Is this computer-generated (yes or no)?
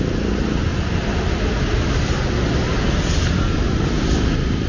no